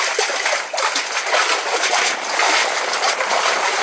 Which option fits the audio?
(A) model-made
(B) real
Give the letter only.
B